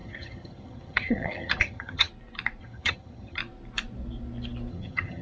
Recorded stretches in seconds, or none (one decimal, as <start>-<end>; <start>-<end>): 2.1-2.6; 3.4-4.7